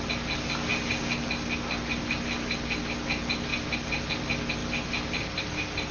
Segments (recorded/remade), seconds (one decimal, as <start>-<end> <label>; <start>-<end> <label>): 0.0-5.9 recorded